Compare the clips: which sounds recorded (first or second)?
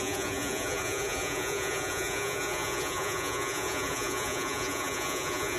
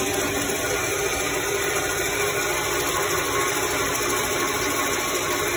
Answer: second